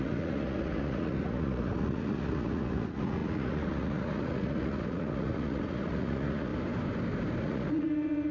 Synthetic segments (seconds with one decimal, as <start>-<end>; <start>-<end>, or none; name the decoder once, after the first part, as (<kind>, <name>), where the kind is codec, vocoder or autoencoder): 0.0-6.5 (vocoder, Vocos); 7.4-8.3